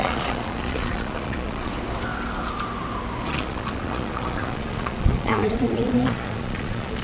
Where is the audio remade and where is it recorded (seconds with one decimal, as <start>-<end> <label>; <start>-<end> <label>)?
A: 0.0-1.7 remade; 1.7-3.3 recorded; 3.3-7.0 remade